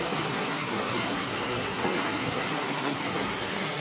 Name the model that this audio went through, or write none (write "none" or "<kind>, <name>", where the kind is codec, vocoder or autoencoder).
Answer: codec, SNAC